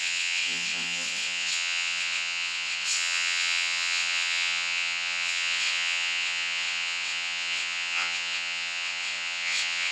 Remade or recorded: remade